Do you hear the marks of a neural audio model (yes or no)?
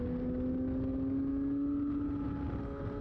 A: no